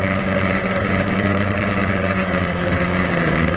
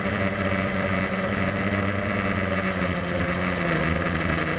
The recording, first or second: second